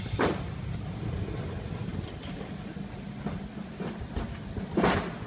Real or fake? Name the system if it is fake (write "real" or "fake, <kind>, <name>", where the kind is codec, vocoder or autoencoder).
real